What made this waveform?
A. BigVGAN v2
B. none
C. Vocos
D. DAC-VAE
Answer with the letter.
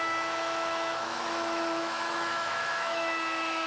D